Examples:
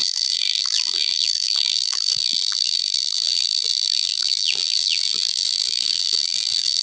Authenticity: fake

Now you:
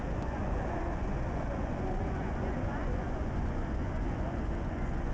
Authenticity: fake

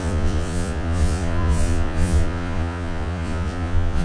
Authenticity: fake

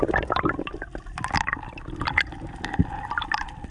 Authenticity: fake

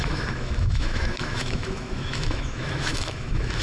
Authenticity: fake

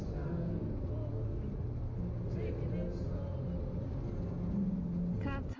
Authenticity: real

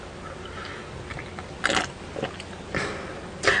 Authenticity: real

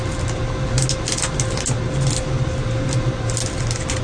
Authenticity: real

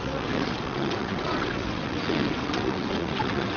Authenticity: fake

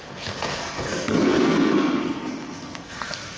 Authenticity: fake